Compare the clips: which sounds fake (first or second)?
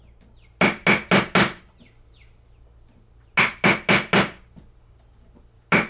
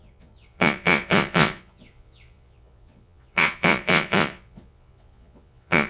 second